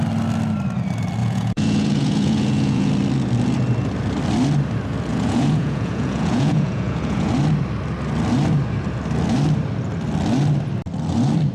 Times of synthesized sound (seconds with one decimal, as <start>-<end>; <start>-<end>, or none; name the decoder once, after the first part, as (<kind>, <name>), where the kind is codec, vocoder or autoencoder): 1.2-2.9 (vocoder, Vocos); 5.1-7.3